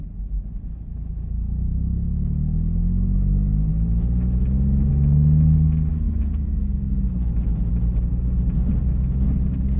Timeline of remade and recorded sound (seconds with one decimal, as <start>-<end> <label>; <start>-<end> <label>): 0.0-9.8 recorded

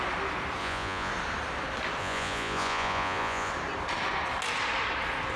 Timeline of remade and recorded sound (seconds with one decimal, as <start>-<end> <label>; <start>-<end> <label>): 0.0-0.6 recorded; 0.6-1.1 remade; 1.1-2.0 recorded; 2.0-3.5 remade; 3.5-5.4 recorded

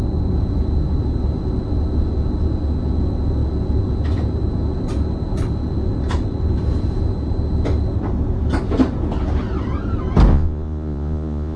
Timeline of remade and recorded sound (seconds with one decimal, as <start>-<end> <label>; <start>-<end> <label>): 0.0-10.3 recorded; 10.3-11.6 remade